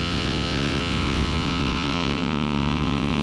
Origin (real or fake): fake